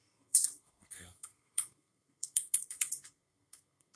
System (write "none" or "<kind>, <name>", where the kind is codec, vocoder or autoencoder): codec, SNAC